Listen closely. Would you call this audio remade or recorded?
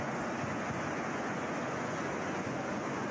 remade